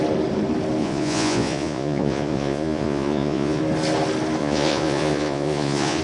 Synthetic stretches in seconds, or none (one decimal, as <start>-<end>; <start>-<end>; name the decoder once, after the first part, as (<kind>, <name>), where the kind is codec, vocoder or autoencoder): 0.8-3.6 (vocoder, Vocos); 4.4-6.0